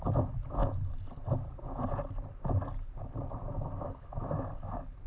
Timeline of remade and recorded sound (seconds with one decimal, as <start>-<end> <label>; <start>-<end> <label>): 0.0-5.1 recorded